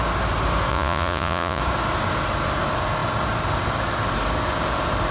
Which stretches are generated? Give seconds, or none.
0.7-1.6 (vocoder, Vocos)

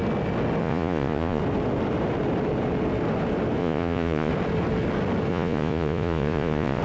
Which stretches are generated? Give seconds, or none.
0.6-1.4 (vocoder, Vocos); 3.6-4.3; 5.3-6.8

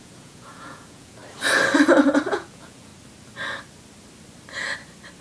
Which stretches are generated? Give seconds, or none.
0.0-1.2 (vocoder, Vocos); 2.3-2.9

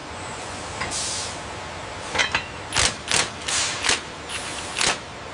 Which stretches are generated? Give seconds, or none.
0.0-0.6 (vocoder, Vocos)

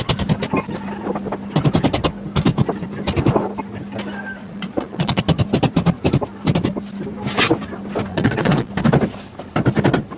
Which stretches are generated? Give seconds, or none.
4.4-5.2 (vocoder, Vocos); 8.1-8.7